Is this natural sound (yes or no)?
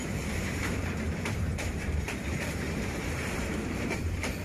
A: no